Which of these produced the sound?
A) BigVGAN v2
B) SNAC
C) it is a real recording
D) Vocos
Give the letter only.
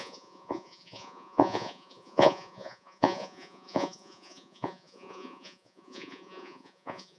D